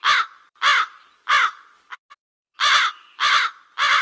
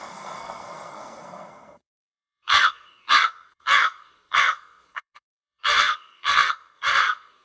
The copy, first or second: second